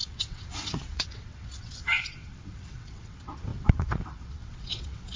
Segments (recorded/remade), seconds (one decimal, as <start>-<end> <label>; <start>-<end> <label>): 0.0-5.2 remade